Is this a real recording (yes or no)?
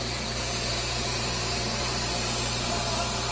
no